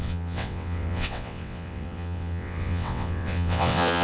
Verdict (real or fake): fake